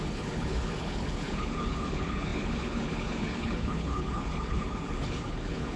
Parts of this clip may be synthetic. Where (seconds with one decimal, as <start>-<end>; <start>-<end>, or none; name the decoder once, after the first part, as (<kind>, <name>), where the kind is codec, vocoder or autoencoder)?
0.0-5.8 (codec, HILCodec)